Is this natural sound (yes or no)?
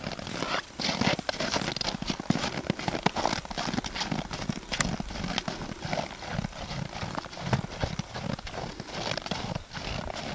yes